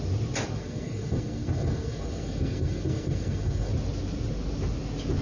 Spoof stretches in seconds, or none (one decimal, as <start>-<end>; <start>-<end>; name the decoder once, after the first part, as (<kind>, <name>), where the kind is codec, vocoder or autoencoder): 0.6-3.7 (codec, SNAC)